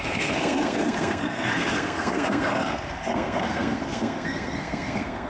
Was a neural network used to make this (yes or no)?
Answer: yes